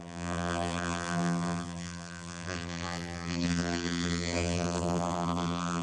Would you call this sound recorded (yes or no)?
no